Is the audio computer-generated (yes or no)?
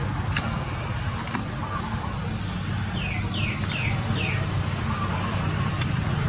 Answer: no